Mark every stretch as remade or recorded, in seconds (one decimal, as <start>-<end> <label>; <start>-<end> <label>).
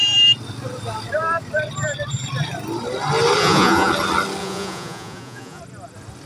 0.0-3.4 recorded; 3.4-3.9 remade; 3.9-4.4 recorded; 4.4-5.6 remade; 5.6-6.3 recorded